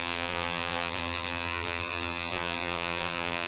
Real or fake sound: fake